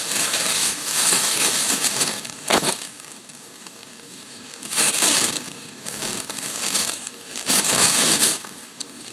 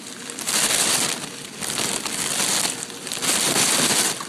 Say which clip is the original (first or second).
second